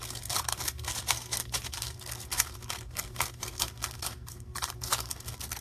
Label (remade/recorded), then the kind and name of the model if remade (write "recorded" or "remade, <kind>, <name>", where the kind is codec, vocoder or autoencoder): remade, codec, SNAC